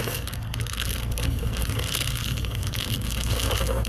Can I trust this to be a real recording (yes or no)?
no